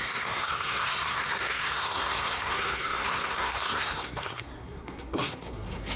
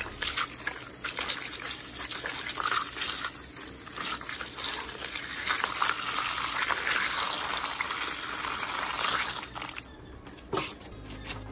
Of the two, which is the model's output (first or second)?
first